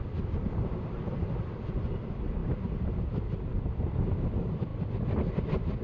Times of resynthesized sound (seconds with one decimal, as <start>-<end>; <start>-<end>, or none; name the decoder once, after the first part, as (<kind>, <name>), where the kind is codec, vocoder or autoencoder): none

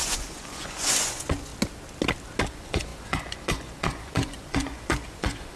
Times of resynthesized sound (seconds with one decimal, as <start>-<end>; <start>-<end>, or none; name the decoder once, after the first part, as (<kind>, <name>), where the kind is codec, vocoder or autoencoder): 0.0-1.5 (vocoder, Vocos); 2.5-5.6

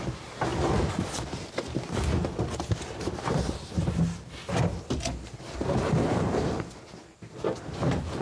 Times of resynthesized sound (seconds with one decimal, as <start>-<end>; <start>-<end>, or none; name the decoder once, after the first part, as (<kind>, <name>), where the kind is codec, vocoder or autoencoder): none

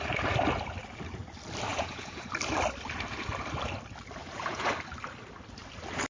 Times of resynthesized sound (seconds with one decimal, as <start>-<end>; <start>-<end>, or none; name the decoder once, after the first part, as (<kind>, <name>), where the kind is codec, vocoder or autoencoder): 1.7-2.3 (vocoder, Vocos); 4.2-4.7